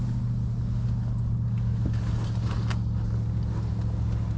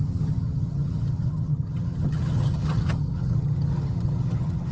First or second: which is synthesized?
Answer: second